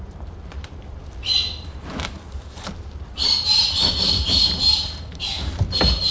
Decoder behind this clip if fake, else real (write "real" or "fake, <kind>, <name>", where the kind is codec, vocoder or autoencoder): fake, vocoder, BigVGAN v2